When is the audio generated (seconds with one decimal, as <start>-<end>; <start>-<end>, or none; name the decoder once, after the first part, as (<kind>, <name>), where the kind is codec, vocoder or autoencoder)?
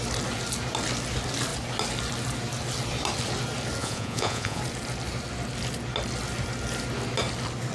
3.8-4.6 (vocoder, Vocos)